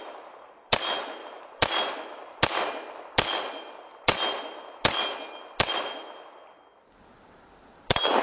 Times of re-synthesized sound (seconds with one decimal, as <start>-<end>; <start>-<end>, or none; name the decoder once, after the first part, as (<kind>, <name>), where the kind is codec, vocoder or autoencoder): none